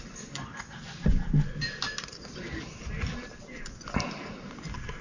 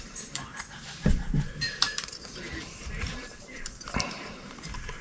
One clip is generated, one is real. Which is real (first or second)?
first